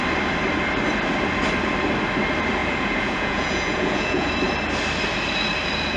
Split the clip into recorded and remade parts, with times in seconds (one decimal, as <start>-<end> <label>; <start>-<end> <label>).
0.0-2.6 recorded; 2.6-4.3 remade; 4.3-6.0 recorded

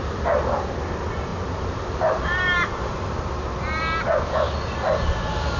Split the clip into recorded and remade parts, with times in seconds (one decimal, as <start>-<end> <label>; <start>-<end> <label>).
0.0-5.6 recorded

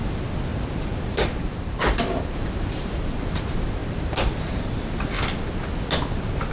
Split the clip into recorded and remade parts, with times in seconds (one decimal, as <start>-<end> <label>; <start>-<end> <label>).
0.0-0.5 recorded; 0.5-3.4 remade; 3.4-6.5 recorded